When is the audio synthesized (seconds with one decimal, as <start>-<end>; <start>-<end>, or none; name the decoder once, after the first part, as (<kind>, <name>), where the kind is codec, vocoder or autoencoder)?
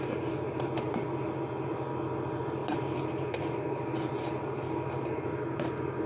none